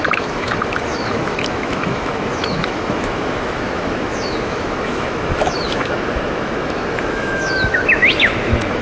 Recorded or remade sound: remade